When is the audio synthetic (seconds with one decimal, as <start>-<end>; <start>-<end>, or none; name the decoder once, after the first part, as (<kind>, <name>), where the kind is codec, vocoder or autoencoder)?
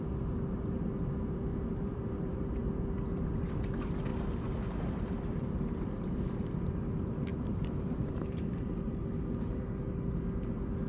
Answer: 1.5-2.5 (vocoder, BigVGAN v2); 4.1-6.5; 7.3-8.9